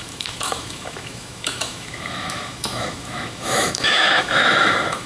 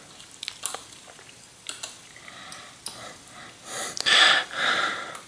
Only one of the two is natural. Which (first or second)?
second